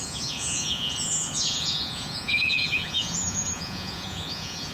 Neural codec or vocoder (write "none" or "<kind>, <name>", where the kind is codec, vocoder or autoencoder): vocoder, Vocos